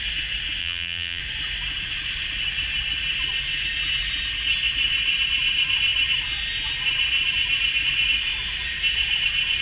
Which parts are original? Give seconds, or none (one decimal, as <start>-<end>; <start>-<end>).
0.0-0.6; 1.2-9.6